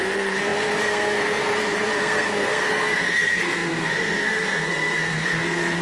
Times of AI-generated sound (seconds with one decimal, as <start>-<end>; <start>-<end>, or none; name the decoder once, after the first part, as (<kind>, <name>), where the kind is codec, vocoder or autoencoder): 0.0-5.8 (codec, SNAC)